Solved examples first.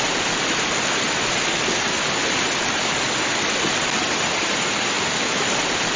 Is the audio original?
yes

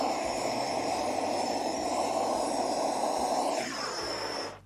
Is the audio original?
yes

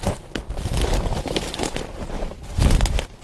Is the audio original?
yes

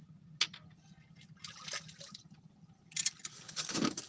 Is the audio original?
yes